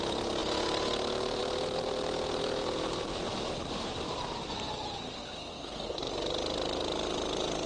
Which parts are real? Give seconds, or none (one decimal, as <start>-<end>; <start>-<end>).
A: 0.0-5.5; 6.1-7.7